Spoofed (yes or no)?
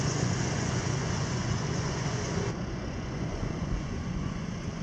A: yes